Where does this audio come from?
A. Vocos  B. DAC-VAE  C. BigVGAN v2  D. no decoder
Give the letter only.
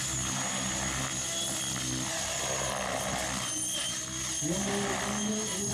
D